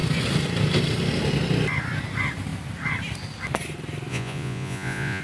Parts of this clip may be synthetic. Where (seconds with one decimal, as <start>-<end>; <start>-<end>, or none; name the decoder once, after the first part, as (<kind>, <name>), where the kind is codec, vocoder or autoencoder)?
4.1-5.2 (vocoder, Vocos)